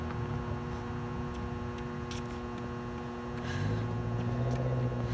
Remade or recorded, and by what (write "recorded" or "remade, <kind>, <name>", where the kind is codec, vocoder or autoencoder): recorded